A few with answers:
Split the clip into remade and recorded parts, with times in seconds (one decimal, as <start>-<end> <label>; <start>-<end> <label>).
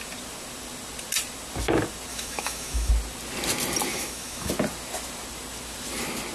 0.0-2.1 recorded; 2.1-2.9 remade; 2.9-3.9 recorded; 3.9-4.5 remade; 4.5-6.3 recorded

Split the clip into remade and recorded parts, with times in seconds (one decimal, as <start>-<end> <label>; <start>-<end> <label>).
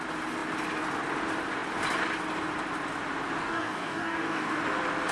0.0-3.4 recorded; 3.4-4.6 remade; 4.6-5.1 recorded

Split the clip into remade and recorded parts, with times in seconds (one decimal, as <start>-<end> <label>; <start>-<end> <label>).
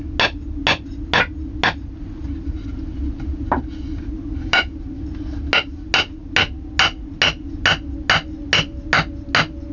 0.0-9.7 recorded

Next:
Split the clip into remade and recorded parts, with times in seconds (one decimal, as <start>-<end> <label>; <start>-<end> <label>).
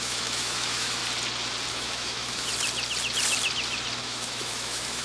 0.0-1.0 remade; 1.0-1.7 recorded; 1.7-2.5 remade; 2.5-4.0 recorded; 4.0-5.0 remade